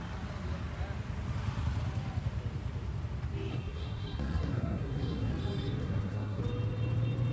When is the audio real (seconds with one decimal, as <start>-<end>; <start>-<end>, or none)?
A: 0.0-3.5; 5.3-5.8; 6.4-7.3